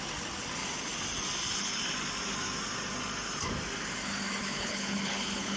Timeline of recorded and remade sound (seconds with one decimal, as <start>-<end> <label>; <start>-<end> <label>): 0.0-4.4 recorded; 4.4-5.6 remade